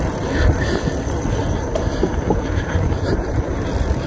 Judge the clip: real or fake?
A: fake